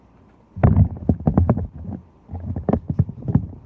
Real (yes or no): yes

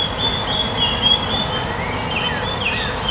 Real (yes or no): yes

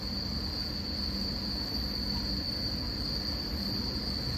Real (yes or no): yes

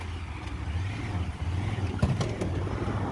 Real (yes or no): yes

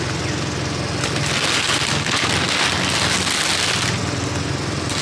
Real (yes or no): yes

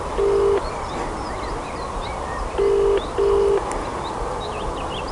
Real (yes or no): yes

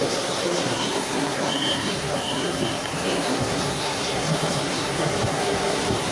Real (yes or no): no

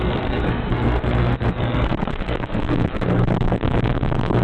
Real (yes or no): no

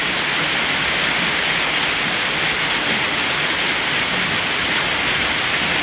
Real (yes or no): yes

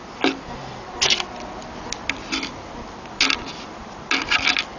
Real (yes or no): yes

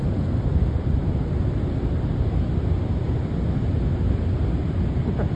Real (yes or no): yes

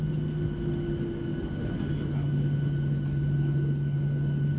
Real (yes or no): yes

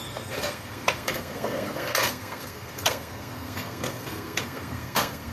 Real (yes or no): no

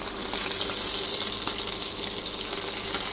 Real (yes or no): yes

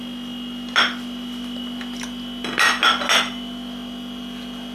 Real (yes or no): yes